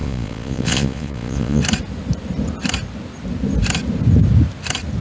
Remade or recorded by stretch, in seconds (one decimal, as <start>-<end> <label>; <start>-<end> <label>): 0.0-1.6 remade; 1.6-5.0 recorded